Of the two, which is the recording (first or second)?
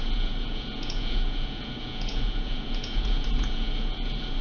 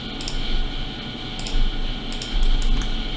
second